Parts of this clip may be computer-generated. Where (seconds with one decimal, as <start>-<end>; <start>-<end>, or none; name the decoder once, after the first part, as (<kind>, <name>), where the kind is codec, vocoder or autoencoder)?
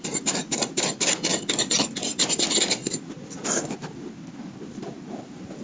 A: 0.0-1.3 (vocoder, BigVGAN v2); 4.7-5.6